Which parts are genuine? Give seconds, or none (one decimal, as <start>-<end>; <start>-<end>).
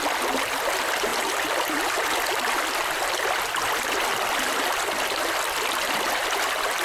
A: 0.0-6.8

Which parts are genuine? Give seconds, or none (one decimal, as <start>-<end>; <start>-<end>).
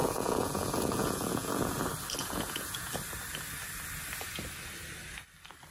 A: 1.7-2.2; 2.9-5.7